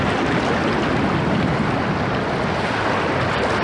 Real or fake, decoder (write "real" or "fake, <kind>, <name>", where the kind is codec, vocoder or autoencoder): real